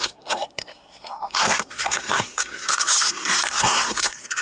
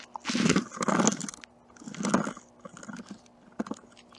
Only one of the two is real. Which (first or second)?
second